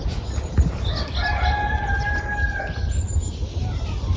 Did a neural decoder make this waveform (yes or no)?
no